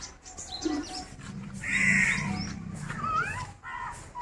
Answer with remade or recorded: recorded